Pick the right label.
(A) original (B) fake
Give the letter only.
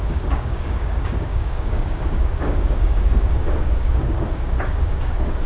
B